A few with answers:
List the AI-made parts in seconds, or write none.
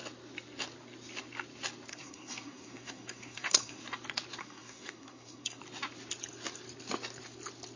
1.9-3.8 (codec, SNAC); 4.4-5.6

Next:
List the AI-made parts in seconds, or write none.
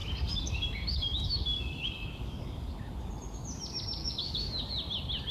0.0-3.1 (codec, DAC); 4.0-4.6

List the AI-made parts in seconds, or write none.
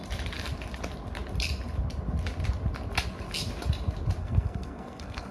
4.2-5.3 (codec, SNAC)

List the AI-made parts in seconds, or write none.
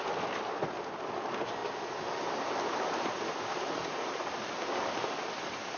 none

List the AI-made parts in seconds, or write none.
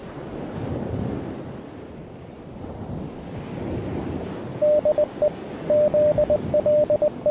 none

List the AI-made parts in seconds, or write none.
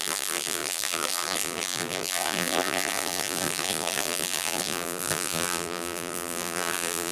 0.0-7.1 (vocoder, BigVGAN v2)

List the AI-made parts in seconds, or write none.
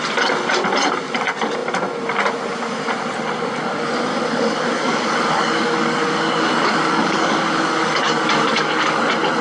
4.1-9.0 (codec, DAC)